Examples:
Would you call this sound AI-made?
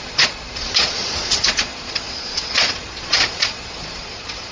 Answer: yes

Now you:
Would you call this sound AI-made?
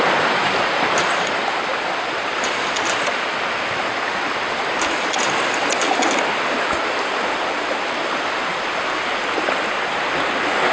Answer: no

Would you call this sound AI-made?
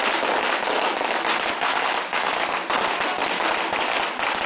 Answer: no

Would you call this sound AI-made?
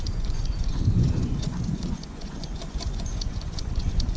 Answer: yes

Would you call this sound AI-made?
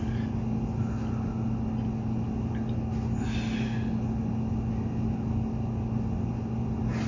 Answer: no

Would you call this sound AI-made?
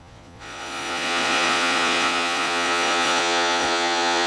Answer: yes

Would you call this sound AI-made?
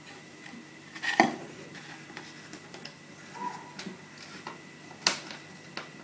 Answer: no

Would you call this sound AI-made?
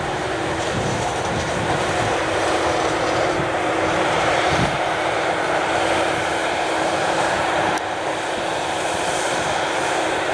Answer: yes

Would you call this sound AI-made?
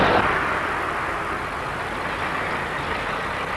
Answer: no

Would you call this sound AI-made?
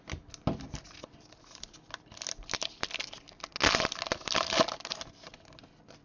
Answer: no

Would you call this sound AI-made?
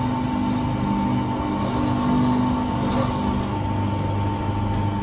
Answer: no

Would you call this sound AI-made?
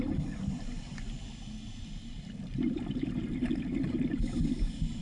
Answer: no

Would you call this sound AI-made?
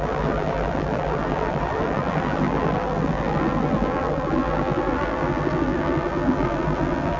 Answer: yes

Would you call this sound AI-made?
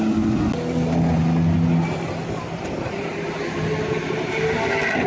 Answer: no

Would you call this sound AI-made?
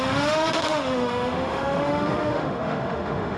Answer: yes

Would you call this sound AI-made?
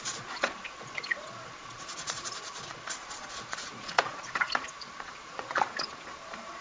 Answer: yes